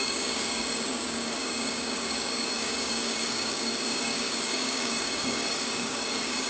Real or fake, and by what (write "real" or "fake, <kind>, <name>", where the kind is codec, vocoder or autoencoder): fake, codec, DAC